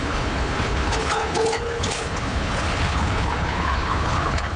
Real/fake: fake